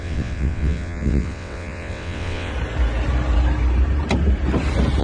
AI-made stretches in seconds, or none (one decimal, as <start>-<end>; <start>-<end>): 0.0-2.5